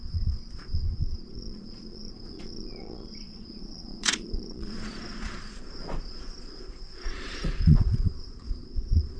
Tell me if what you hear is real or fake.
fake